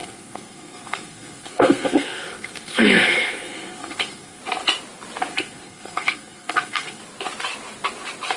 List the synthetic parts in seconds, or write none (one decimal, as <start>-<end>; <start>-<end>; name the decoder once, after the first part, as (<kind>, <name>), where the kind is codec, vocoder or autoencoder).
0.0-4.4 (codec, SNAC); 5.3-7.0